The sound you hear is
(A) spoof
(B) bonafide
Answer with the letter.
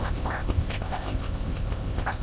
A